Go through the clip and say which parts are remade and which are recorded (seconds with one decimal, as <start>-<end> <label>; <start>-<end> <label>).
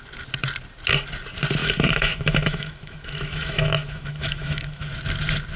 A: 0.0-1.6 recorded; 1.6-4.9 remade; 4.9-5.6 recorded